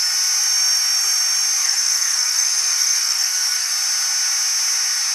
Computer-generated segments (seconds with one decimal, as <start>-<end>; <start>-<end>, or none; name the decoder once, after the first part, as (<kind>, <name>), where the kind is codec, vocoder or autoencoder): 1.6-3.7 (codec, SNAC)